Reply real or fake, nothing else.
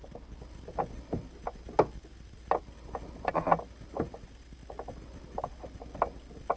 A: real